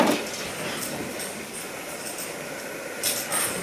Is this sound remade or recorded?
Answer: recorded